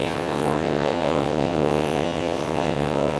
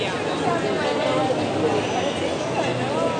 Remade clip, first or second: first